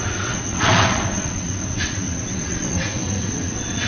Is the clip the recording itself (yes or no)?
no